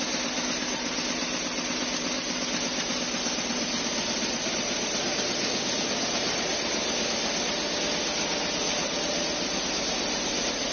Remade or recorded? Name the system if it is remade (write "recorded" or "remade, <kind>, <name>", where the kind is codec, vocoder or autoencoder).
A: recorded